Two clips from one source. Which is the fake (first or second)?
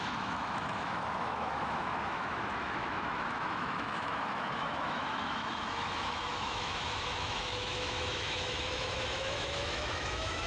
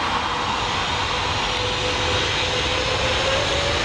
first